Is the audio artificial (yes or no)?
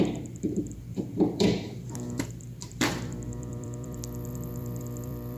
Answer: yes